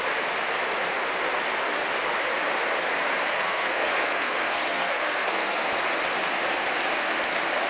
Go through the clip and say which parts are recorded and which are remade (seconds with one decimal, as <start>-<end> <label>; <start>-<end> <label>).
0.0-3.3 recorded; 3.3-5.6 remade; 5.6-7.7 recorded